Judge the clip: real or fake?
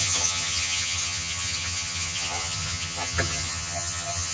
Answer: fake